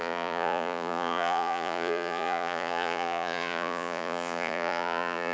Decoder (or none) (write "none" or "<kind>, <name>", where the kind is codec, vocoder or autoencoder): vocoder, Vocos